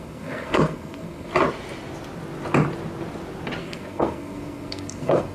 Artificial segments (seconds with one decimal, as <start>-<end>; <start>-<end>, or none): 0.0-1.3; 3.6-5.3